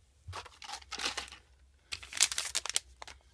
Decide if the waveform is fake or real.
real